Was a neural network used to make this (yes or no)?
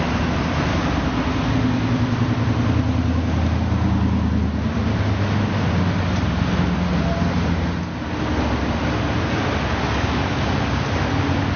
no